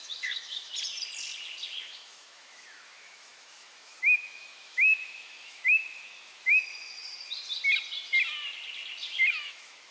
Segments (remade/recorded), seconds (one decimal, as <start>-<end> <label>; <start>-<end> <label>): 0.0-0.7 remade; 0.7-1.8 recorded; 1.8-7.0 remade; 7.0-9.3 recorded; 9.3-9.9 remade

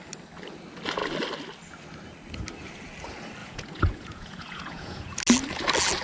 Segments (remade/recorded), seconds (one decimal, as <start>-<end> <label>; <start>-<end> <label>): 0.0-3.4 recorded; 3.4-5.2 remade; 5.2-6.0 recorded

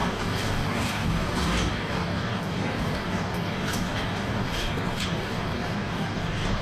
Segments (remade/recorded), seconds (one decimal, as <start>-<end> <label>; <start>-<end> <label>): 0.0-6.6 remade

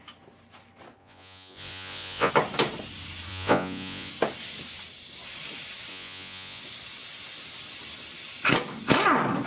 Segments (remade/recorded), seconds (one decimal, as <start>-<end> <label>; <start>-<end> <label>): 0.0-1.0 recorded; 1.0-2.3 remade; 2.3-3.3 recorded; 3.3-4.1 remade; 4.1-5.9 recorded; 5.9-6.6 remade; 6.6-9.5 recorded

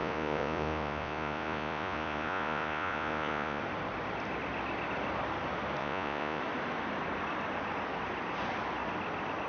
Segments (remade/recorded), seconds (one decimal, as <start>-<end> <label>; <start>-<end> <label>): 0.0-3.6 remade; 3.6-5.8 recorded; 5.8-6.4 remade; 6.4-9.5 recorded

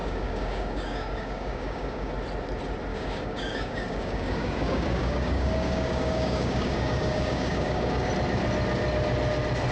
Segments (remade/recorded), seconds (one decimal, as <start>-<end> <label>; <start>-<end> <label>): 0.0-2.1 remade; 2.1-2.9 recorded; 2.9-8.1 remade; 8.1-9.7 recorded

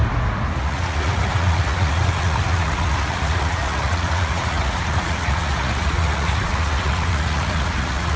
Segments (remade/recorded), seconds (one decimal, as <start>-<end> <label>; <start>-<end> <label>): 0.0-0.5 recorded; 0.5-8.2 remade

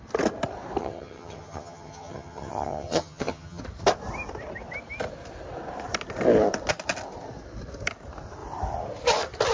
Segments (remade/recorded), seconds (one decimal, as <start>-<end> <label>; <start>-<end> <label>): 0.0-0.8 recorded; 0.8-3.6 remade; 3.6-9.5 recorded